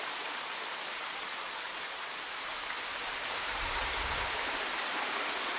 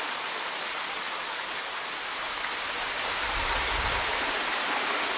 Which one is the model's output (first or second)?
first